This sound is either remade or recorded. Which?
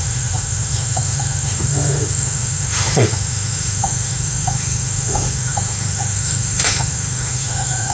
remade